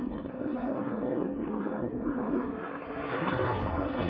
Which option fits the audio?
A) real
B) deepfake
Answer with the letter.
B